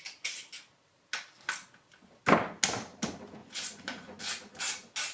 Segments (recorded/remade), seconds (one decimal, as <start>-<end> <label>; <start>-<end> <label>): 0.0-3.4 recorded; 3.4-4.2 remade; 4.2-5.1 recorded